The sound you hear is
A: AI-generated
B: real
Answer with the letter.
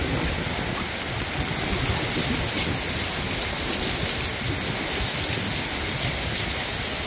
B